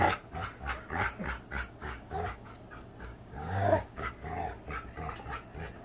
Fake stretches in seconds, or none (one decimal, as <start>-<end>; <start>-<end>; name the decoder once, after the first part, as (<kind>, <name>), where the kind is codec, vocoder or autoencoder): 1.8-2.5 (codec, DAC); 3.1-4.1